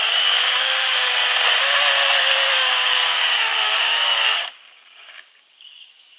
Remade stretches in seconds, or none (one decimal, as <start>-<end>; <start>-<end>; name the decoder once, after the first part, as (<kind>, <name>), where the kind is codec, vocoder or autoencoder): 0.0-1.2 (codec, DAC); 2.2-6.2